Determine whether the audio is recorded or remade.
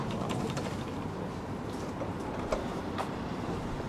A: recorded